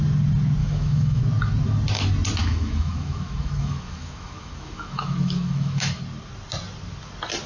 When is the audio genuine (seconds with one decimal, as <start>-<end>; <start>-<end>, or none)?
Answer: 0.0-0.6; 1.2-2.4; 6.0-7.5